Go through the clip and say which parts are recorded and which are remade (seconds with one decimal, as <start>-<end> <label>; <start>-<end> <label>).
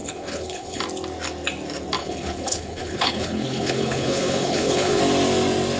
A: 0.0-0.8 remade; 0.8-2.0 recorded; 2.0-5.0 remade; 5.0-5.8 recorded